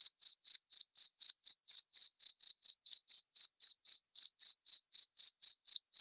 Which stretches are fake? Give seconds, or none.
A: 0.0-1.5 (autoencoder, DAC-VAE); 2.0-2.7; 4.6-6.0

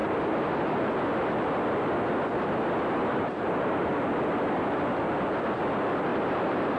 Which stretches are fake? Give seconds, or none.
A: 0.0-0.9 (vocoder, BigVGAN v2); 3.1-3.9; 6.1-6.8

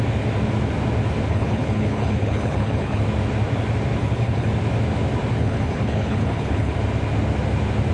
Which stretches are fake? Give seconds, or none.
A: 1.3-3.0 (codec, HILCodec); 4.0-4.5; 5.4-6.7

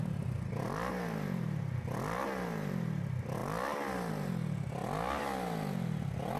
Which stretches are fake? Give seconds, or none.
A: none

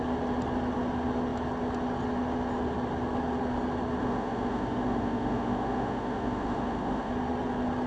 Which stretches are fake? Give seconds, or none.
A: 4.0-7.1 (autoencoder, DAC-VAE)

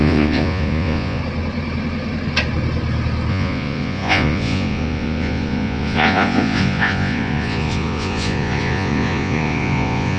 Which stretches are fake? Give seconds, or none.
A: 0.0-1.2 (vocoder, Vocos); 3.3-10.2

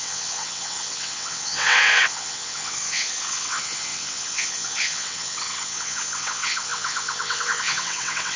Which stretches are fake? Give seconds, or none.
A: 0.0-8.4 (vocoder, WaveNeXt)